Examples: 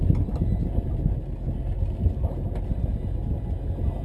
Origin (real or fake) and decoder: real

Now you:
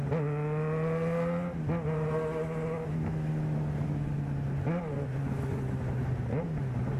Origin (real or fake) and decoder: real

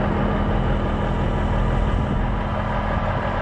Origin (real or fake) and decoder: real